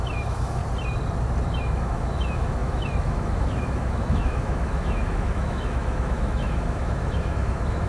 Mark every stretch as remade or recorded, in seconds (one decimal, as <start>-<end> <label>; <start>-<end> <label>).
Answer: 0.0-0.6 remade; 0.6-1.6 recorded; 1.6-7.9 remade